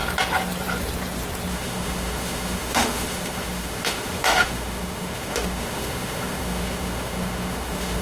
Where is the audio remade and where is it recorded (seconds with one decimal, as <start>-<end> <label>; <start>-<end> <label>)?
0.0-1.5 recorded; 1.5-8.0 remade